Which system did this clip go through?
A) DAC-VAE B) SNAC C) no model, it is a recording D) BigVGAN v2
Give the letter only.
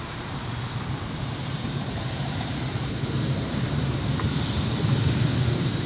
D